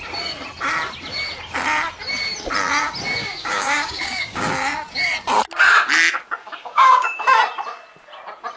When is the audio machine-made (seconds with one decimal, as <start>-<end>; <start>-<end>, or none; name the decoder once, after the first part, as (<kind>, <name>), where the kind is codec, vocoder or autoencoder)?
3.2-4.5 (codec, DAC); 6.4-7.2